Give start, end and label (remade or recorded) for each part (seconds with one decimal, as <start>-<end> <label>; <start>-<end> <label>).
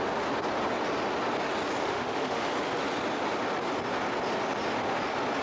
0.0-1.8 recorded; 1.8-2.5 remade; 2.5-5.4 recorded